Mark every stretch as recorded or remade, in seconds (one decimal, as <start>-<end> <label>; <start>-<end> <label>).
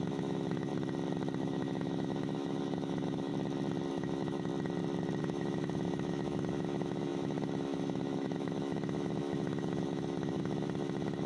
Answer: 0.0-0.7 remade; 0.7-1.4 recorded; 1.4-3.3 remade; 3.3-3.9 recorded; 3.9-4.5 remade; 4.5-5.2 recorded; 5.2-11.3 remade